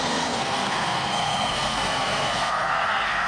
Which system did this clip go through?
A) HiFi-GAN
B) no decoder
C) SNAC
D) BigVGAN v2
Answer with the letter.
C